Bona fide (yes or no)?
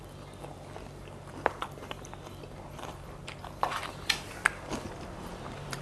no